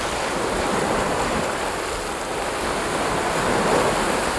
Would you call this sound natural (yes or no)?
yes